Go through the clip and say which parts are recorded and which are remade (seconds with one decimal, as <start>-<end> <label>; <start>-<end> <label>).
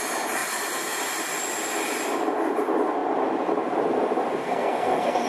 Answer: 0.0-4.4 recorded; 4.4-5.3 remade